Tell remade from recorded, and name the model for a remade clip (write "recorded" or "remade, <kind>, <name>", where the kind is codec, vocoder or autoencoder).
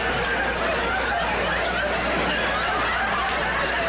recorded